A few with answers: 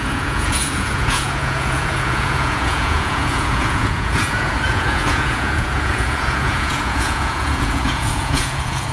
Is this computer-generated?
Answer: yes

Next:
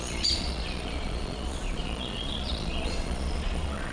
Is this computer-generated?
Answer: yes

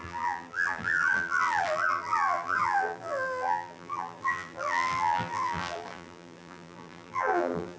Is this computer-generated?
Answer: yes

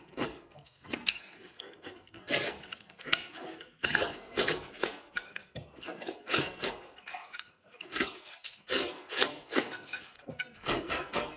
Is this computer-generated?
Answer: yes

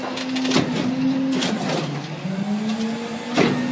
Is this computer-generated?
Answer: no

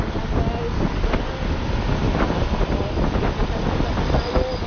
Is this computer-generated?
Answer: no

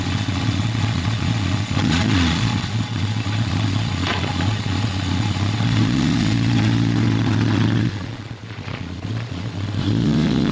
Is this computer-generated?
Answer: yes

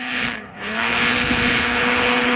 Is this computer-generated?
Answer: yes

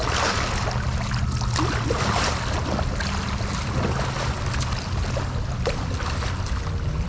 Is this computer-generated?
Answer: no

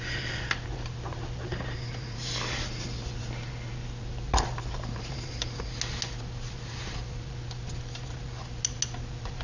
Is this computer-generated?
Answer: no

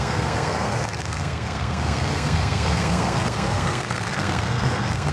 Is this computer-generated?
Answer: yes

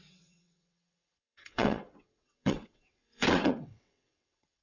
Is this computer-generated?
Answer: yes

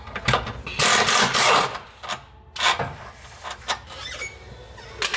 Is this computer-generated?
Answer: no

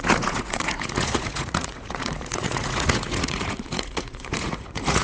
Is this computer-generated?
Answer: yes